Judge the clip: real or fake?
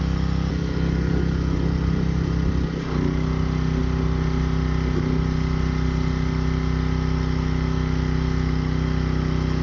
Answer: real